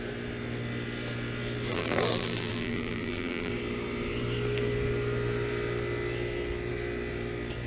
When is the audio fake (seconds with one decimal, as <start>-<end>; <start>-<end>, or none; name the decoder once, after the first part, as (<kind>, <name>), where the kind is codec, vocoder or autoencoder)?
1.7-3.5 (vocoder, BigVGAN v2)